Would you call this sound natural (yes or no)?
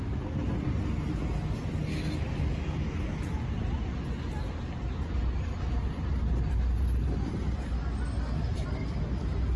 yes